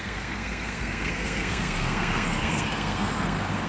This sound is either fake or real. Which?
fake